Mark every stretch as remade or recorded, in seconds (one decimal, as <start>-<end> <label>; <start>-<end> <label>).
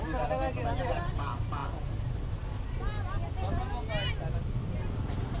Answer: 0.0-5.4 recorded